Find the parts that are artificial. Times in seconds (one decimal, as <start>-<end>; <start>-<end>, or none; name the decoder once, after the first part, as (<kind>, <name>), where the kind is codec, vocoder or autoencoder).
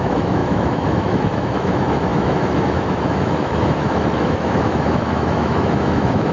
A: 0.0-6.3 (autoencoder, DAC-VAE)